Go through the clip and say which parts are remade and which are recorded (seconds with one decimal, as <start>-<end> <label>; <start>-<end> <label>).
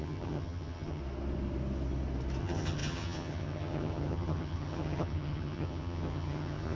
0.0-1.0 remade; 1.0-2.4 recorded; 2.4-6.7 remade